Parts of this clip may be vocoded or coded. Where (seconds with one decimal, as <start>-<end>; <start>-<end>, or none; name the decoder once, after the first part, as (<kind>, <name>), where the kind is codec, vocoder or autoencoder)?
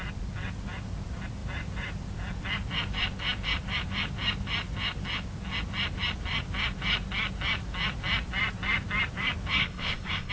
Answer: 9.6-10.3 (codec, SNAC)